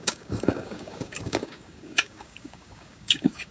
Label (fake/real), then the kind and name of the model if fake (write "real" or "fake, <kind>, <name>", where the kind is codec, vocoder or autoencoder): fake, codec, DAC